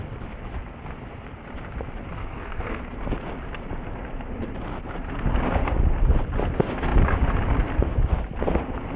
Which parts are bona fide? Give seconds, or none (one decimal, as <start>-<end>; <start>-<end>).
0.0-2.2; 2.8-9.0